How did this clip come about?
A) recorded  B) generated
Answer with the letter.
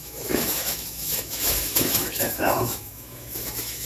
B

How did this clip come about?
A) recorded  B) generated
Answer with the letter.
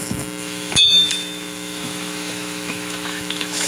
B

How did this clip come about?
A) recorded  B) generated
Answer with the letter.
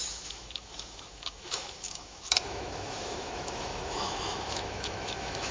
B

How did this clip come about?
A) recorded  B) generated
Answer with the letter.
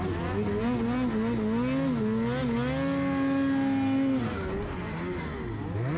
A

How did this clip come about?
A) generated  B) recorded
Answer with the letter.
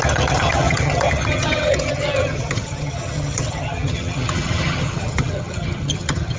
A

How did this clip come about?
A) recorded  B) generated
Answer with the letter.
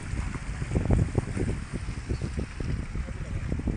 A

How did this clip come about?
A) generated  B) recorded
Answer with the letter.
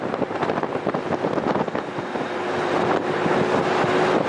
B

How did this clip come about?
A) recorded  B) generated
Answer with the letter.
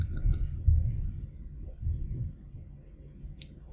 A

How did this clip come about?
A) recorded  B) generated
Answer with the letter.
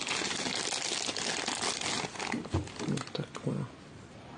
A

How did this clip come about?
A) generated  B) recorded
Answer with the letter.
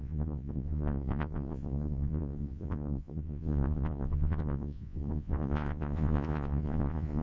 A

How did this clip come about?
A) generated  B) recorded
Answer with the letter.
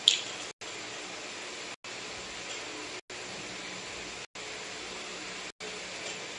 B